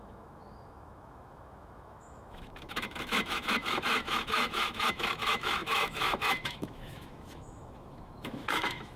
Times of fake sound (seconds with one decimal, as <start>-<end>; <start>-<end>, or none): 0.0-9.0